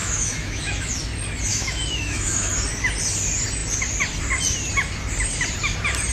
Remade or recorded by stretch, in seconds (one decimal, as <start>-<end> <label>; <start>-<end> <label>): 0.0-0.9 remade; 0.9-1.5 recorded; 1.5-2.5 remade; 2.5-6.1 recorded